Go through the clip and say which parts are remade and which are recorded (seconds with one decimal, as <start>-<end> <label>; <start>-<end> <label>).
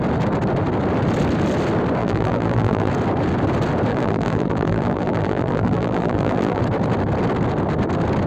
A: 0.0-2.0 recorded; 2.0-2.9 remade; 2.9-3.9 recorded; 3.9-6.6 remade; 6.6-8.3 recorded